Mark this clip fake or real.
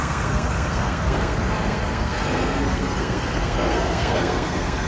fake